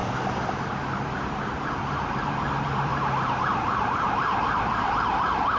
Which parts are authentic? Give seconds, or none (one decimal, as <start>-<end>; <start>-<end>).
0.0-0.5; 2.9-3.4